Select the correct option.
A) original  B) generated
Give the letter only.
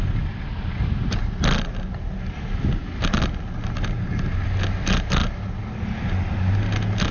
A